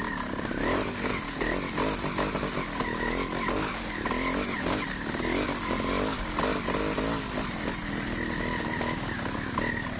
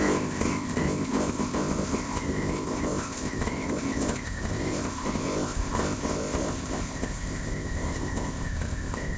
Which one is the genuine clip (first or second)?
first